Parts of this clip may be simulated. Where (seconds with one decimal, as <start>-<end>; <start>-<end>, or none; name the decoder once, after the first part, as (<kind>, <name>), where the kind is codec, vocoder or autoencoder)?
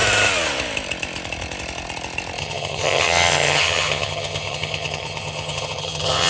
2.4-6.3 (vocoder, HiFi-GAN)